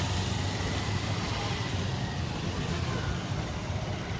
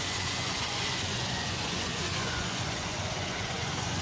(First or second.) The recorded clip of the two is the first